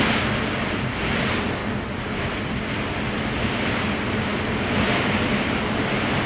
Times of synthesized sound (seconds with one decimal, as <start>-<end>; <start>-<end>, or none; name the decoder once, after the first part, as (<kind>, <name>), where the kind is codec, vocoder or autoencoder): none